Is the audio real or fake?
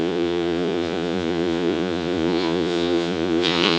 fake